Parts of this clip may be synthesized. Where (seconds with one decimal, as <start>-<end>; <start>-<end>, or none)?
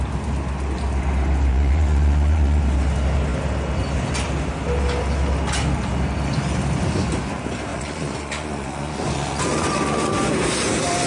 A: 1.5-2.6; 7.7-10.1